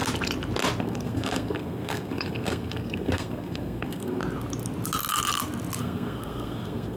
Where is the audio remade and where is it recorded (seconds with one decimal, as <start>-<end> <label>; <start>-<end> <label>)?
0.0-0.8 recorded; 0.8-4.2 remade; 4.2-5.8 recorded; 5.8-7.0 remade

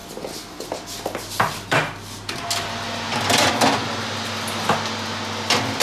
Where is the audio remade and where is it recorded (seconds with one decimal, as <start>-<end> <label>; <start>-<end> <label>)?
0.0-5.8 recorded

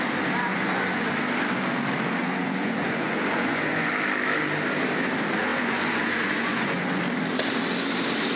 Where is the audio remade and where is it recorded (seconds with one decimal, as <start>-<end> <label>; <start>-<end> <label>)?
0.0-0.5 recorded; 0.5-1.1 remade; 1.1-2.2 recorded; 2.2-3.9 remade; 3.9-5.5 recorded; 5.5-7.0 remade; 7.0-8.4 recorded

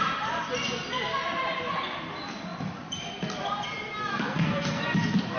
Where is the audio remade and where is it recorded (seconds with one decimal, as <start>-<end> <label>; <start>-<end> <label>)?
0.0-4.1 recorded; 4.1-4.8 remade; 4.8-5.4 recorded